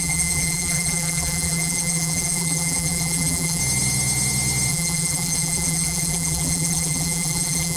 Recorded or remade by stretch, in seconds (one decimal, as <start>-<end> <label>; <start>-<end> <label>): 0.0-3.6 remade; 3.6-4.7 recorded; 4.7-7.8 remade